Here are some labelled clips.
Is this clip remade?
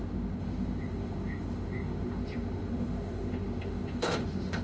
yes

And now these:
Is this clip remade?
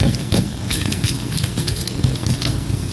yes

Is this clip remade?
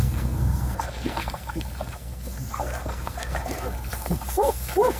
yes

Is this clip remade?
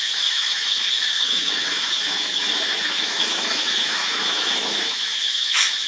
yes